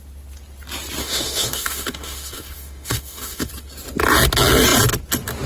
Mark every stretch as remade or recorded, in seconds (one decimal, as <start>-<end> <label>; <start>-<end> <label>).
0.0-1.0 recorded; 1.0-3.5 remade; 3.5-5.5 recorded